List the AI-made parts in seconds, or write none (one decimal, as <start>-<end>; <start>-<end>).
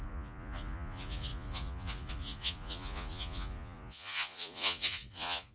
0.0-5.5